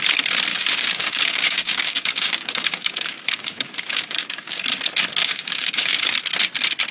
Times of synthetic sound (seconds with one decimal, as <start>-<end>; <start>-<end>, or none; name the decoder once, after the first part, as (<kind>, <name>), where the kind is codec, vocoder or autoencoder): 0.5-4.6 (codec, DAC); 5.2-6.1